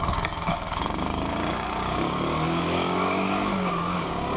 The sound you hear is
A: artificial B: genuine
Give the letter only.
A